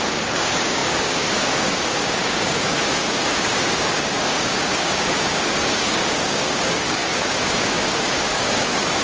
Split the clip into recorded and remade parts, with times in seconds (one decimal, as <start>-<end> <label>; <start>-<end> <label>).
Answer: 0.0-9.0 remade